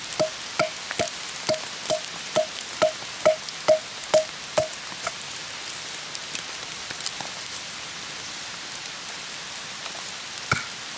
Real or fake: real